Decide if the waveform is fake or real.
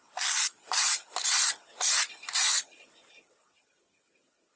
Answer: real